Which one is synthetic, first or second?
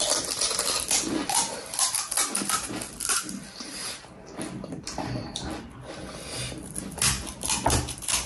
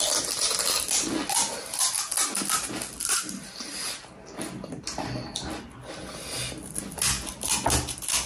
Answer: first